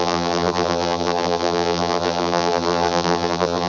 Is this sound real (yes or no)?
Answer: no